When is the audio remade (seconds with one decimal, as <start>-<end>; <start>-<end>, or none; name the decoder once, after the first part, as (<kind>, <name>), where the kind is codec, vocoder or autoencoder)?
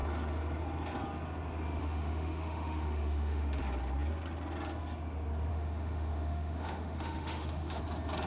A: 1.8-3.6 (autoencoder, DAC-VAE); 5.5-7.8